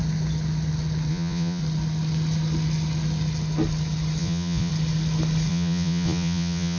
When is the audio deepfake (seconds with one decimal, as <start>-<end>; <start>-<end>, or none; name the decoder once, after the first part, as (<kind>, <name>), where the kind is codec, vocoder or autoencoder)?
1.1-1.6 (vocoder, Vocos); 4.2-4.7; 5.5-6.8